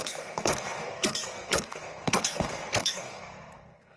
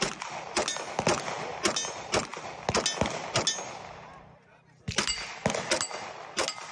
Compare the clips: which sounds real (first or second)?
second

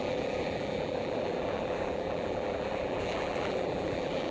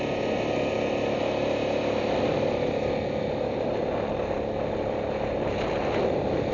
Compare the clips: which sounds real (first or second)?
second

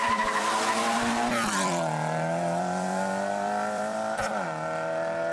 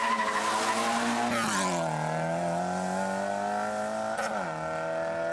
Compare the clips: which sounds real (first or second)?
second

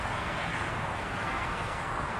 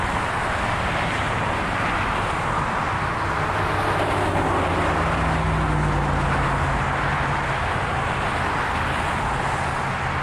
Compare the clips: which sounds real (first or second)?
second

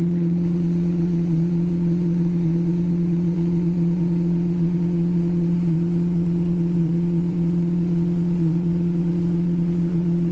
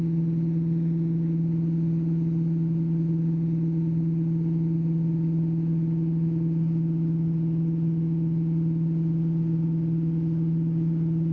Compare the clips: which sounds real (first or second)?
second